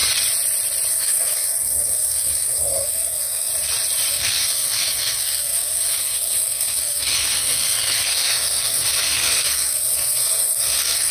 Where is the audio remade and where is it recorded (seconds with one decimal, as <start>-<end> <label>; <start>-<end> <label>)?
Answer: 0.0-0.9 recorded; 0.9-3.5 remade; 3.5-4.1 recorded; 4.1-11.1 remade